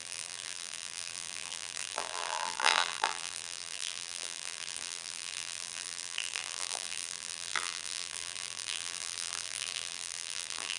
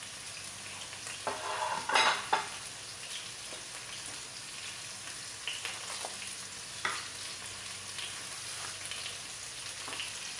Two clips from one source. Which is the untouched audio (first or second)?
second